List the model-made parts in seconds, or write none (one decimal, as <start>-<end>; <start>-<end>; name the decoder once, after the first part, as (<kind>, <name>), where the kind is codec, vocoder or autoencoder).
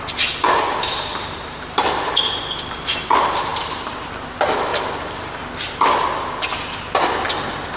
1.1-2.4 (vocoder, BigVGAN v2); 3.5-4.1; 4.7-5.9